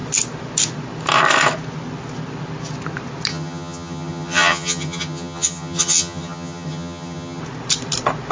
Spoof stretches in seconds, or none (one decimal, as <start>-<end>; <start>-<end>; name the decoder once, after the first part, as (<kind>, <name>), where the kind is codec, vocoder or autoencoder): 3.3-7.4 (vocoder, HiFi-GAN)